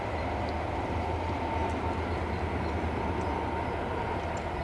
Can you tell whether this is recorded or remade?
recorded